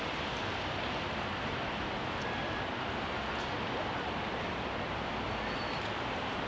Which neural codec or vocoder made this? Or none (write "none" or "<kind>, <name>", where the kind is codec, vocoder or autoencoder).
none